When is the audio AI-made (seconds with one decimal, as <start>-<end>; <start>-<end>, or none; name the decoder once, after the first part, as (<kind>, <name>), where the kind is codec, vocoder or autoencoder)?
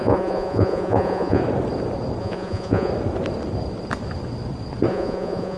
0.0-1.4 (vocoder, Vocos); 2.2-2.9; 4.9-5.6